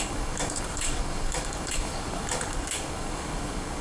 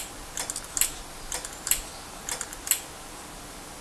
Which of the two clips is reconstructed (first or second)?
first